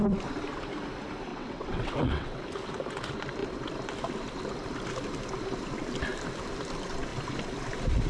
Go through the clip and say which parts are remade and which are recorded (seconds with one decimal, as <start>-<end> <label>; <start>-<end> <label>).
0.0-1.3 recorded; 1.3-2.4 remade; 2.4-8.1 recorded